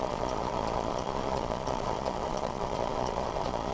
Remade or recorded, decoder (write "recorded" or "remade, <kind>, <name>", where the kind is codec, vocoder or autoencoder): remade, vocoder, Vocos